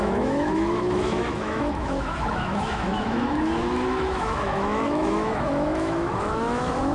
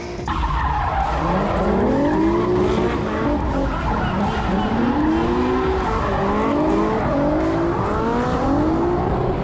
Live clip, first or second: second